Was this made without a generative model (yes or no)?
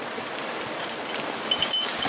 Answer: yes